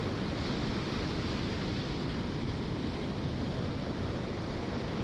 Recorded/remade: recorded